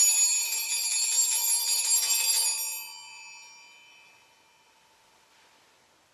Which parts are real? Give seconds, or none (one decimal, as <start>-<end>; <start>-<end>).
0.0-6.1